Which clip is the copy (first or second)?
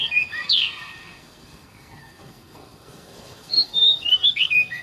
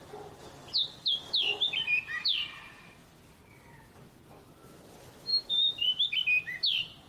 first